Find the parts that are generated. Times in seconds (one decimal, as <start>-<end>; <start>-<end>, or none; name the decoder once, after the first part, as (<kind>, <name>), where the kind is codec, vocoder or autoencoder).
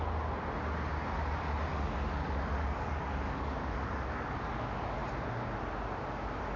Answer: 1.7-4.5 (codec, DAC)